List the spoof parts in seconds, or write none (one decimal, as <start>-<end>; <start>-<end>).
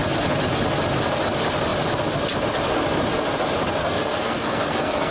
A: 3.8-5.1